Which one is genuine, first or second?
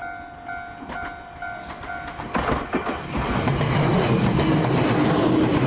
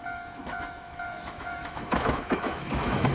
first